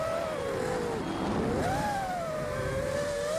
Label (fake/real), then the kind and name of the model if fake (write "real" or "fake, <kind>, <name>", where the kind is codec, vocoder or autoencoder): real